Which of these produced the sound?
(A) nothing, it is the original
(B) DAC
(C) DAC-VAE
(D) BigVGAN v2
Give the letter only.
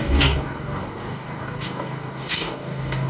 B